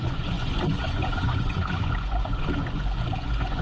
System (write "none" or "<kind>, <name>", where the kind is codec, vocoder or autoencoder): vocoder, Vocos